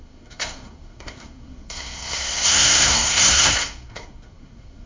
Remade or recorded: remade